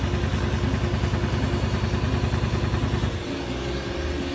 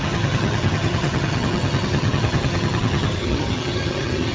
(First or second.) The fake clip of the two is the second